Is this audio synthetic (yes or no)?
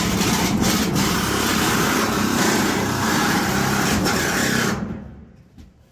yes